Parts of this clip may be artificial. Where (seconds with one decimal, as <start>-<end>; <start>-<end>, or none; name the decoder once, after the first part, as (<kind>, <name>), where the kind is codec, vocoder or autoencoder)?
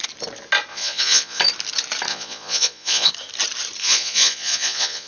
0.7-1.4 (vocoder, Vocos); 2.1-3.1; 3.8-5.1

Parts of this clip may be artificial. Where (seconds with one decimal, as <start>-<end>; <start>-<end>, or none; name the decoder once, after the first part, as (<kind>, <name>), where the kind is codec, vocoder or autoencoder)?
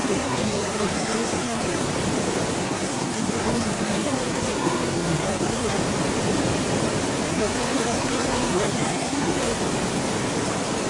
0.0-1.9 (codec, SNAC); 2.6-5.8; 7.3-9.6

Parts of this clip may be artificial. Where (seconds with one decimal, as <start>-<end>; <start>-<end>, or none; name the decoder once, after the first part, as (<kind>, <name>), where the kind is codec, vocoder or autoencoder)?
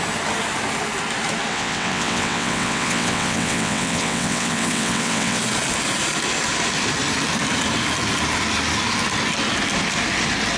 1.5-5.4 (vocoder, WaveNeXt)